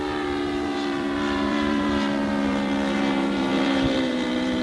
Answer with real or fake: fake